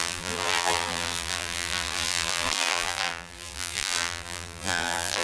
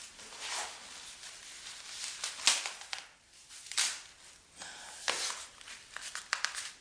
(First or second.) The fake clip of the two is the first